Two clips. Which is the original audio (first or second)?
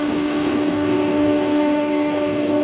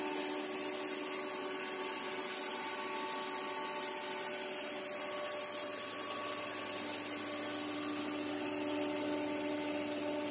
second